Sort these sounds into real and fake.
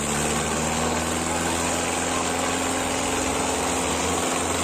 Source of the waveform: real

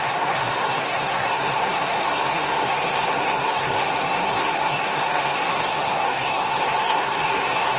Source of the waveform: fake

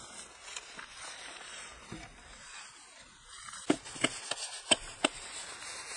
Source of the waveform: real